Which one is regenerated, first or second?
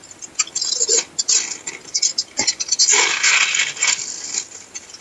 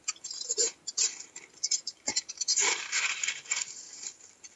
second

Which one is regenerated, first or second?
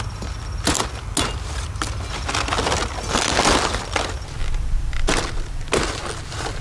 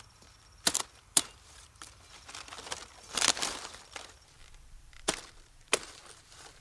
second